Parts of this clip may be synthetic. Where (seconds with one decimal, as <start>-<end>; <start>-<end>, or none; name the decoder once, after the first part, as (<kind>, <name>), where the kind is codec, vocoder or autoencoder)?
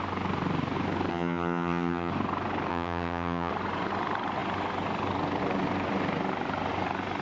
1.1-2.1 (vocoder, HiFi-GAN); 2.7-3.5